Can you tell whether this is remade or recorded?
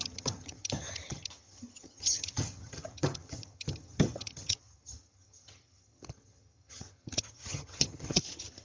remade